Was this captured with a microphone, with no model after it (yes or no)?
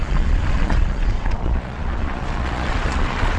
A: no